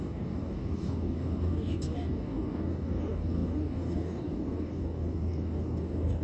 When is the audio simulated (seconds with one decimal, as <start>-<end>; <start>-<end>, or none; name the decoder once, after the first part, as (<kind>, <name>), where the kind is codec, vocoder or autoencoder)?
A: 0.0-6.2 (codec, DAC)